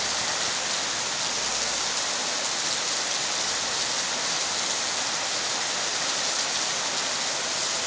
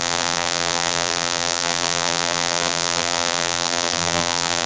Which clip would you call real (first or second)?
first